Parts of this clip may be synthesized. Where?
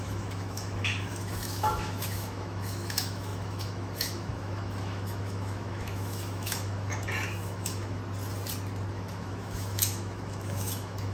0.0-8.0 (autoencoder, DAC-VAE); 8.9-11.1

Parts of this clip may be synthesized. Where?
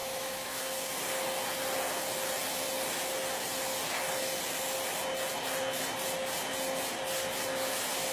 0.0-0.6 (autoencoder, DAC-VAE)